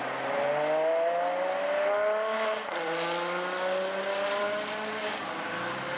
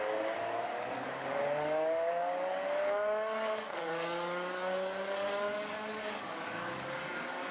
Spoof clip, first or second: second